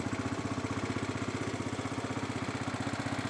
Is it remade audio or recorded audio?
remade